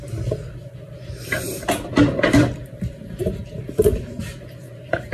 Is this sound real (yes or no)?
no